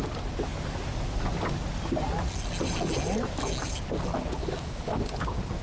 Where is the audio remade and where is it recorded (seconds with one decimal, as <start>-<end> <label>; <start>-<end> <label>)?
0.0-4.4 recorded; 4.4-5.0 remade; 5.0-5.6 recorded